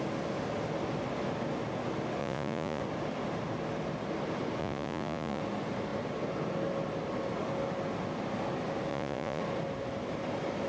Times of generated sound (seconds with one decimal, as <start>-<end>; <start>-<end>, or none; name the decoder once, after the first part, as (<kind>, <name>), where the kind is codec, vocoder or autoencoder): 2.2-2.8 (vocoder, Vocos); 4.6-5.4; 8.9-9.4